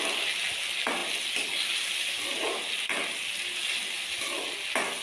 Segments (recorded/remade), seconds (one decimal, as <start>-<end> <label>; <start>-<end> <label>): 0.0-5.0 recorded